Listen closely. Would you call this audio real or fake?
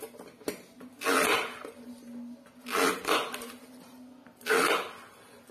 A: real